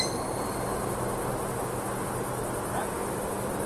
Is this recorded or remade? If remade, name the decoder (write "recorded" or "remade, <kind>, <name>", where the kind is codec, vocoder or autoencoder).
recorded